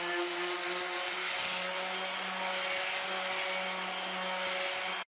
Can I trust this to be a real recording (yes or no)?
yes